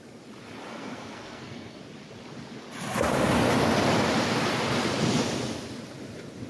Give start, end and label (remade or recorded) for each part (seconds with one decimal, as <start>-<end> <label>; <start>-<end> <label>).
0.0-0.7 recorded; 0.7-1.8 remade; 1.8-6.5 recorded